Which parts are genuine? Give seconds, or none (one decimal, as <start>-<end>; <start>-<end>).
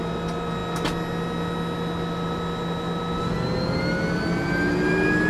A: 0.0-5.3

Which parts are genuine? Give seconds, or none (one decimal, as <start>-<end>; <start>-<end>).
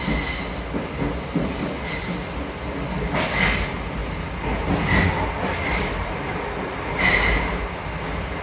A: 0.0-5.7; 6.3-8.4